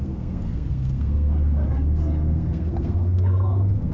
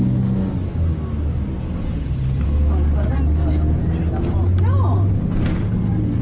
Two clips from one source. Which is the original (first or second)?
second